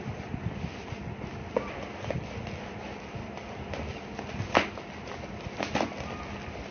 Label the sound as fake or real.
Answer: real